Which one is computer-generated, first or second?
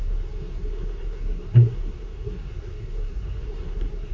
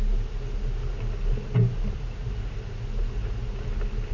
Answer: first